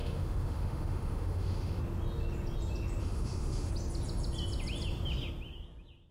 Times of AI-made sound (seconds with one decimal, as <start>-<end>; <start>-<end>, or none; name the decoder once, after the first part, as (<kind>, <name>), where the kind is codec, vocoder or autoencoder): 0.0-1.8 (autoencoder, DAC-VAE); 3.0-3.7